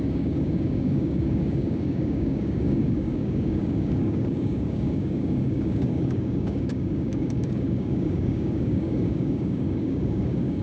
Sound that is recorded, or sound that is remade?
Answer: remade